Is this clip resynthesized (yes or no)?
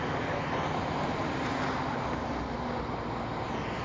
no